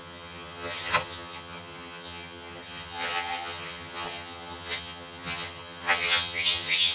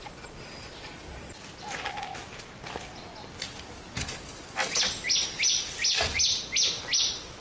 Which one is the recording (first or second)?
second